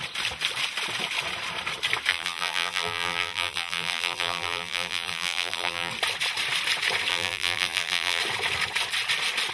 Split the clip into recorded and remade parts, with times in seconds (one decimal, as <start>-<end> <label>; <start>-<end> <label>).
0.0-2.1 recorded; 2.1-5.9 remade; 5.9-7.1 recorded; 7.1-8.2 remade; 8.2-9.5 recorded